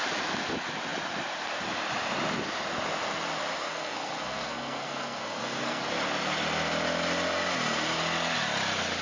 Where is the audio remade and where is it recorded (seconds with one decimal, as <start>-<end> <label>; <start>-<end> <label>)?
0.0-3.6 recorded; 3.6-5.8 remade; 5.8-9.0 recorded